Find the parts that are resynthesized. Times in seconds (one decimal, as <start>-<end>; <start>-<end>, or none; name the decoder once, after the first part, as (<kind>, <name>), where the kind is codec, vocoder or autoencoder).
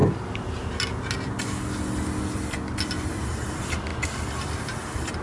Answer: 3.1-3.9 (vocoder, BigVGAN v2); 4.6-5.2